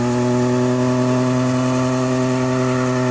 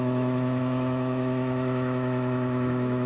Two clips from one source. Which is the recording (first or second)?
first